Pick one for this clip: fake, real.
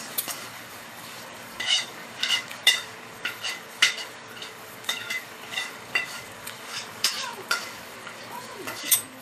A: fake